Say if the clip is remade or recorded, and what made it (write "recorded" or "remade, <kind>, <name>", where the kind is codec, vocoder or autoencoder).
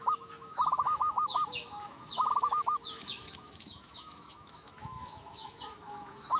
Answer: remade, autoencoder, DAC-VAE